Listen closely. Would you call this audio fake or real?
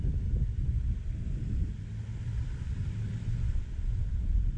fake